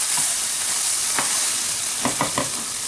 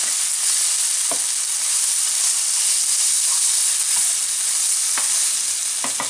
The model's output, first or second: first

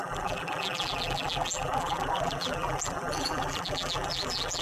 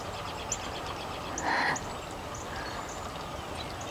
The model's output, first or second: first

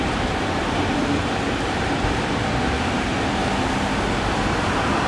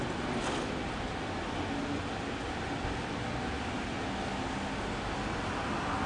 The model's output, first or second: first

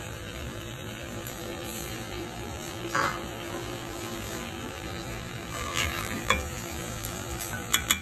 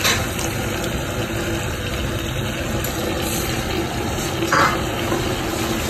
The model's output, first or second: first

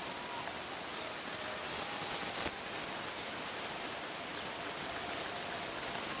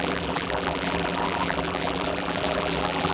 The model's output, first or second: second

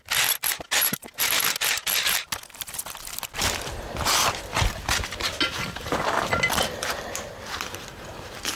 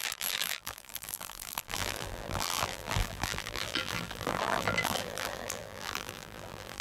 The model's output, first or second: second